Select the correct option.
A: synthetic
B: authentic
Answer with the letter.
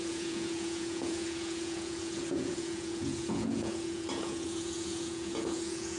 A